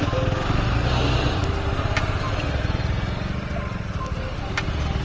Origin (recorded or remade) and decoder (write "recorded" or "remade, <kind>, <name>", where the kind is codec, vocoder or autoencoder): recorded